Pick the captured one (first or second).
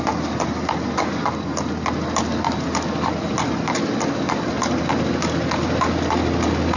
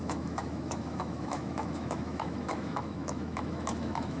first